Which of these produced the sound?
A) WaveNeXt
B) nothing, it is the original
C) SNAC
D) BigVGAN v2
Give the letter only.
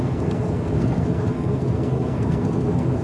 C